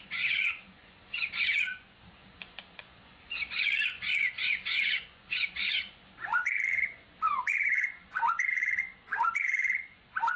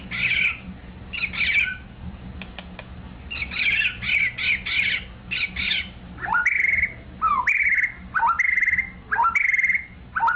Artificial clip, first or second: first